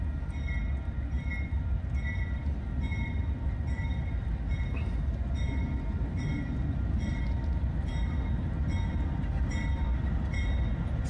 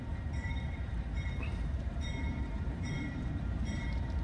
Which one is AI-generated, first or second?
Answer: second